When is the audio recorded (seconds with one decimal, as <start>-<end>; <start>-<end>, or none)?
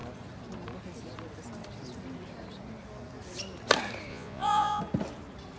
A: 0.0-4.1; 4.8-5.6